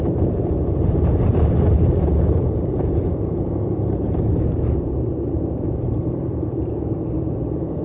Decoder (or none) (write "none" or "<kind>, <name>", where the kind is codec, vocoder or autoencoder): vocoder, BigVGAN v2